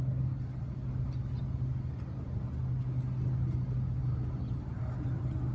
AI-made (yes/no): no